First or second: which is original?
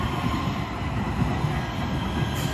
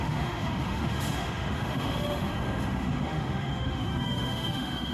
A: first